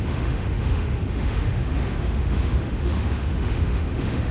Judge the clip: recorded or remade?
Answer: remade